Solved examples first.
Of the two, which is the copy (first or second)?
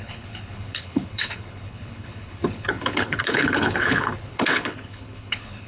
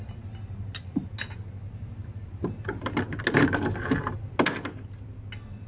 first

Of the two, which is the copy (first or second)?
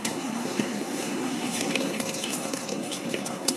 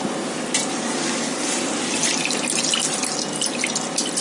first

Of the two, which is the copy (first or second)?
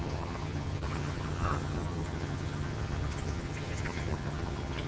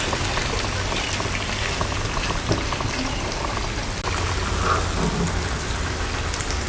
first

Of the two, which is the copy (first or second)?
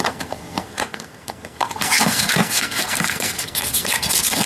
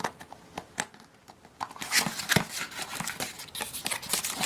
first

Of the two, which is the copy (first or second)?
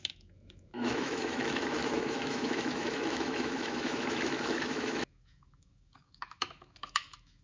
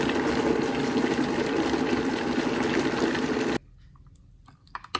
first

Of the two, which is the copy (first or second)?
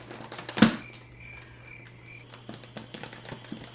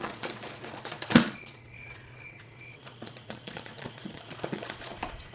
second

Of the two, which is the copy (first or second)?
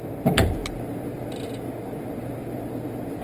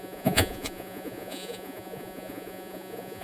second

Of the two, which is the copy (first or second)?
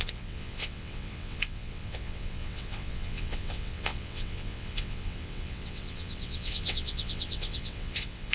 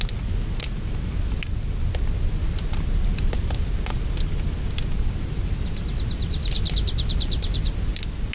first